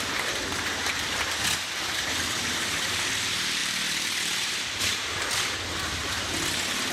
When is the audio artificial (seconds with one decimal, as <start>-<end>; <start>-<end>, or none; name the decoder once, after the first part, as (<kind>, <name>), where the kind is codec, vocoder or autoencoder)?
3.6-6.3 (vocoder, BigVGAN v2)

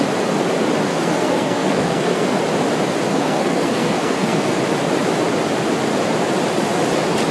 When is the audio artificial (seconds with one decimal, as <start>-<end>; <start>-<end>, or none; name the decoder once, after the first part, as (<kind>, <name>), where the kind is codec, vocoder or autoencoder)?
0.9-2.4 (codec, SNAC); 3.1-4.6

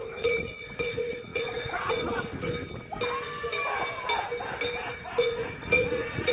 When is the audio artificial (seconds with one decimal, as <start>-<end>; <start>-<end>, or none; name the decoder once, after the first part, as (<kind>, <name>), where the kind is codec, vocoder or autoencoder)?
0.0-2.5 (vocoder, Vocos); 4.9-6.3

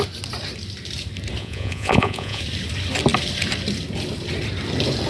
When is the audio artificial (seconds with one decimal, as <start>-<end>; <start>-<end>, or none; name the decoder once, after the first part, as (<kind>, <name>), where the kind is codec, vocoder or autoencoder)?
1.4-2.4 (vocoder, Vocos)

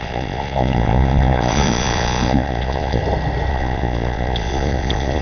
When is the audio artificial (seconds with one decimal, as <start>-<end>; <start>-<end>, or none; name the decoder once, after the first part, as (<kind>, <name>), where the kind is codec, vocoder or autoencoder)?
0.0-3.0 (vocoder, Vocos); 3.5-5.2

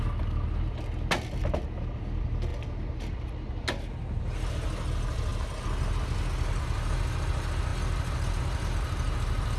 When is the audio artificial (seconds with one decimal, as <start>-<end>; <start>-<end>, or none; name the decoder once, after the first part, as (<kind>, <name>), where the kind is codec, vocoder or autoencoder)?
none